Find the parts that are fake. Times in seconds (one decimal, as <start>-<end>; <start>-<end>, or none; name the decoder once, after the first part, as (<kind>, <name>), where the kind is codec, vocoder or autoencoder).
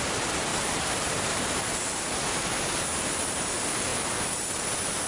0.5-2.5 (vocoder, BigVGAN v2); 2.9-3.4